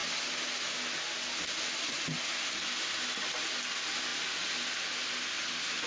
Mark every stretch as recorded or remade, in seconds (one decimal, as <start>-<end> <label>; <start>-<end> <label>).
0.0-5.9 recorded